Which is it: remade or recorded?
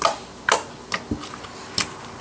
recorded